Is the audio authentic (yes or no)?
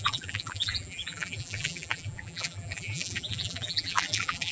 no